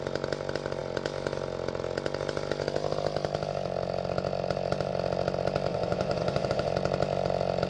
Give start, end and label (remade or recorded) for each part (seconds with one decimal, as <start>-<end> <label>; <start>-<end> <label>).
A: 0.0-5.7 recorded; 5.7-6.7 remade; 6.7-7.7 recorded

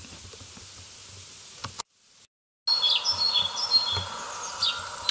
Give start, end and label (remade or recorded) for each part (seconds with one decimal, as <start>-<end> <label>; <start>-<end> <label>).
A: 0.0-5.1 recorded

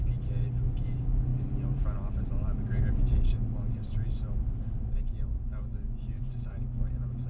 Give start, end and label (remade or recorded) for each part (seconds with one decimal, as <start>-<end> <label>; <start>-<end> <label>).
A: 0.0-5.9 recorded; 5.9-6.5 remade; 6.5-7.3 recorded

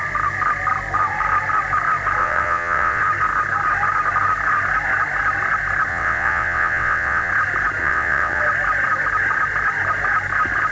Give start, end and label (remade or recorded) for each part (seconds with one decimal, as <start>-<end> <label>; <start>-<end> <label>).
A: 0.0-2.2 recorded; 2.2-3.0 remade; 3.0-5.9 recorded; 5.9-7.3 remade; 7.3-7.8 recorded; 7.8-8.4 remade; 8.4-10.7 recorded

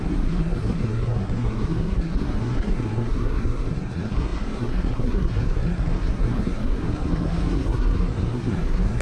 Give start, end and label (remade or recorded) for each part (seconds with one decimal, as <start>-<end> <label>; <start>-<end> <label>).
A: 0.0-9.0 remade

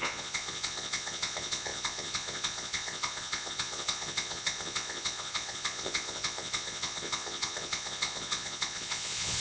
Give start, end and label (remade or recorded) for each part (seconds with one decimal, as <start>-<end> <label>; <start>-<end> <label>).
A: 0.0-9.4 remade

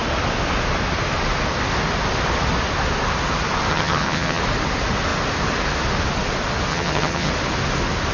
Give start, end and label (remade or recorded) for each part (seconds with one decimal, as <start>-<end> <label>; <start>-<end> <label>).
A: 0.0-3.7 recorded; 3.7-4.4 remade; 4.4-6.7 recorded; 6.7-7.3 remade; 7.3-8.1 recorded

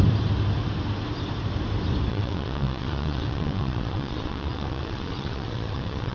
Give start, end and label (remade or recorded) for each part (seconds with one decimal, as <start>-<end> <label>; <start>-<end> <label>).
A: 0.0-2.1 recorded; 2.1-6.1 remade